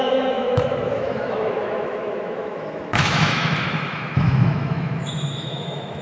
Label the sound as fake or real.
fake